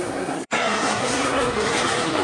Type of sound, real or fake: fake